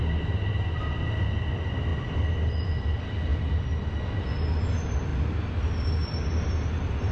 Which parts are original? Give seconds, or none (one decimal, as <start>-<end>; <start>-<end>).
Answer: 0.0-7.1